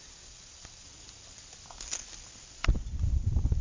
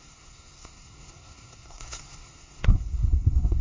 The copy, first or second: second